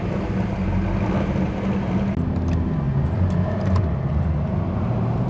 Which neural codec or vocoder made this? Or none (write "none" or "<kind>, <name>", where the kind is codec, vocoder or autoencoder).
none